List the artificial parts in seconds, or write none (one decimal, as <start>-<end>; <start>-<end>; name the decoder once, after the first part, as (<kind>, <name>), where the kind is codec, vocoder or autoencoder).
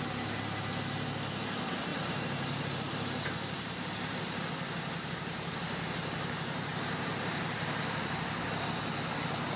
1.9-4.4 (vocoder, BigVGAN v2); 6.7-8.1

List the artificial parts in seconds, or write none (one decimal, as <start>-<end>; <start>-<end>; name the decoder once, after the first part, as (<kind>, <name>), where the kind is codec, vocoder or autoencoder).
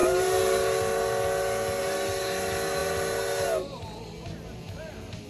none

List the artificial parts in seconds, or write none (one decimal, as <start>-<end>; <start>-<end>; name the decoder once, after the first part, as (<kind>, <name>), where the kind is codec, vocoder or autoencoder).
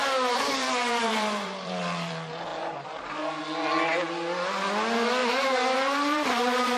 0.0-2.1 (vocoder, BigVGAN v2); 2.5-3.4; 5.2-6.8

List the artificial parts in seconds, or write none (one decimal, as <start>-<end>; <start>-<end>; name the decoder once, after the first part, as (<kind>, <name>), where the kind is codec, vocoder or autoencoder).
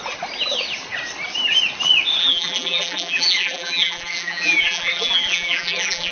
2.2-6.1 (vocoder, BigVGAN v2)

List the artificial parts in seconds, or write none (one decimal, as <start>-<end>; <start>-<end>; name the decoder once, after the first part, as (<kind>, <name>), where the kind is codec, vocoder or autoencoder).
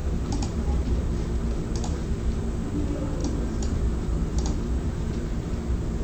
0.0-1.1 (vocoder, BigVGAN v2); 3.2-3.8; 4.3-5.5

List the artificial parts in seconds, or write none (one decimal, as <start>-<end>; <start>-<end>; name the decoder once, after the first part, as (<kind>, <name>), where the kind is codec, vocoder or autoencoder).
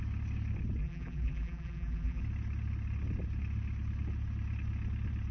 0.8-2.2 (vocoder, BigVGAN v2)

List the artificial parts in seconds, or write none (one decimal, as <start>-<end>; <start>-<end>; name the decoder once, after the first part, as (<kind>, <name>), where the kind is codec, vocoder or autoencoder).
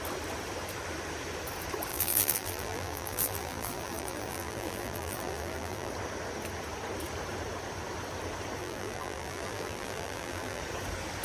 1.9-5.9 (vocoder, BigVGAN v2); 8.6-10.6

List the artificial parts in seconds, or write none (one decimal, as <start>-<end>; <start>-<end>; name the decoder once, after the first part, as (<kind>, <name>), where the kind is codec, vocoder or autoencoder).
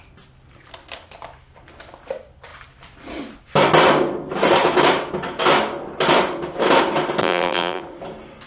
7.2-7.8 (vocoder, BigVGAN v2)